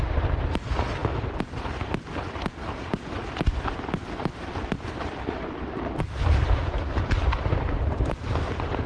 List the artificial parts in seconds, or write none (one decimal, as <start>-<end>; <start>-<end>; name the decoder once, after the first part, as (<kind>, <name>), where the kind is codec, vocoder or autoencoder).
6.2-8.9 (vocoder, BigVGAN v2)